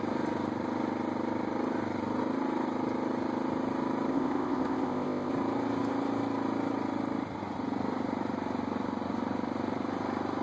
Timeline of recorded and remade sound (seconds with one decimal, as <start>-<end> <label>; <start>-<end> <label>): 0.0-4.1 recorded; 4.1-5.3 remade; 5.3-10.4 recorded